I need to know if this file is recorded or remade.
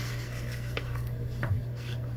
remade